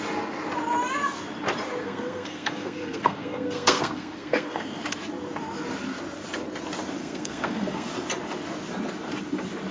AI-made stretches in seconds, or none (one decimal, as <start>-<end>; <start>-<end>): 1.8-4.8; 7.0-7.9